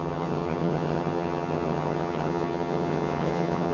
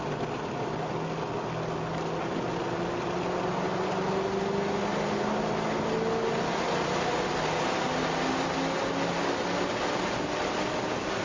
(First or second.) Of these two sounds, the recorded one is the second